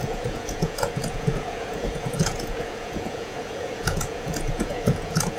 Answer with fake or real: fake